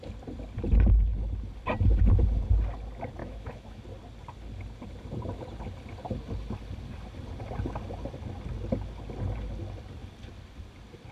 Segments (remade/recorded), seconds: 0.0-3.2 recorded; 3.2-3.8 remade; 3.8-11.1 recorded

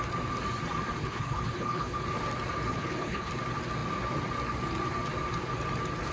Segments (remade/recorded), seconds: 0.0-1.0 recorded; 1.0-2.0 remade; 2.0-2.7 recorded; 2.7-3.3 remade; 3.3-6.1 recorded

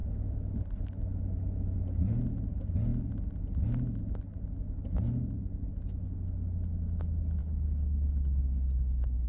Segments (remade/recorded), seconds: 0.0-7.4 recorded; 7.4-9.3 remade